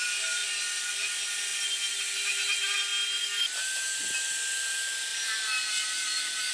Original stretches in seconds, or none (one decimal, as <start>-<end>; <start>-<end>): 0.0-5.1